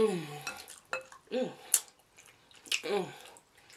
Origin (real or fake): real